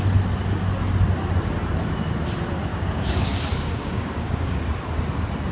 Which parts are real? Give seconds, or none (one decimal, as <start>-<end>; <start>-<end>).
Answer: 0.0-2.7; 4.6-5.5